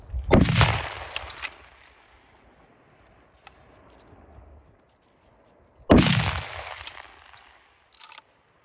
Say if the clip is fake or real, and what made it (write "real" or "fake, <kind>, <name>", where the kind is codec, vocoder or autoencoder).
real